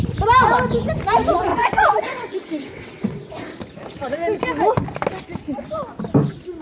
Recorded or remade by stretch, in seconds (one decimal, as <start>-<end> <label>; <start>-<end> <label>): 0.0-1.5 recorded; 1.5-3.3 remade; 3.3-6.6 recorded